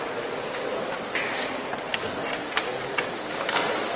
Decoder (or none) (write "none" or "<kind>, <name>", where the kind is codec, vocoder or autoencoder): none